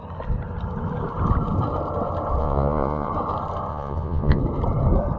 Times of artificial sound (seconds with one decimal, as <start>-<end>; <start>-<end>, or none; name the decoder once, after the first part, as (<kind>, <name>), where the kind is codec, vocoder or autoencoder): 2.4-3.1 (vocoder, Vocos); 3.7-4.4